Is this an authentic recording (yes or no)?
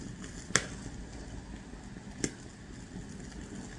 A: yes